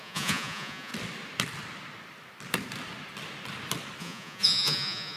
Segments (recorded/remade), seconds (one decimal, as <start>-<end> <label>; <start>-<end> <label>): 0.0-0.9 remade; 0.9-4.0 recorded; 4.0-5.2 remade